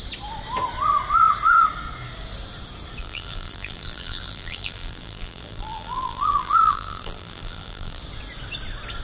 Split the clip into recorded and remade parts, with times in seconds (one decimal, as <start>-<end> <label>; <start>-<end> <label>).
0.0-3.0 recorded; 3.0-8.0 remade; 8.0-9.0 recorded